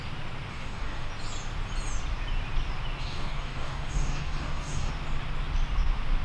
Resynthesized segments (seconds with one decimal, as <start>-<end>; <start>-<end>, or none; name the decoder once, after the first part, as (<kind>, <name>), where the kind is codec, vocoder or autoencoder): 0.5-1.1 (codec, DAC); 3.0-4.9